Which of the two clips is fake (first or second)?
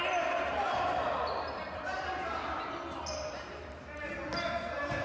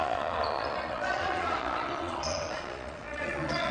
second